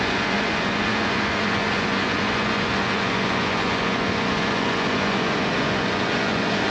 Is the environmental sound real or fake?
fake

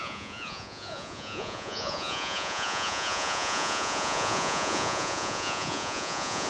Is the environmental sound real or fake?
fake